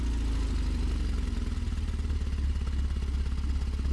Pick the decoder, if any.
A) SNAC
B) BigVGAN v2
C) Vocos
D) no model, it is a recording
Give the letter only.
D